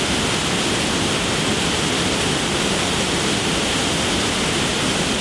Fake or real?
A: real